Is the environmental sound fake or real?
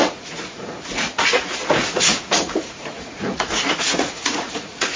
fake